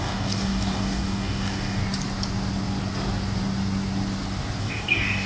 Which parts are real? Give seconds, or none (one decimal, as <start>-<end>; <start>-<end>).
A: 1.8-4.6